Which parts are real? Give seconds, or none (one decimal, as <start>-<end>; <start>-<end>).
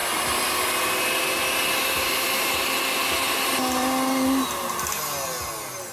0.0-5.9